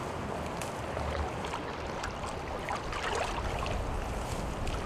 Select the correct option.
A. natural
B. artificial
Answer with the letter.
A